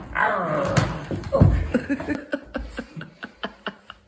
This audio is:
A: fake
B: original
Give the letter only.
B